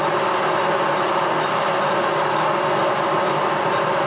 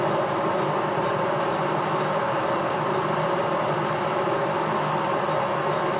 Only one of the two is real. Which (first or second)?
first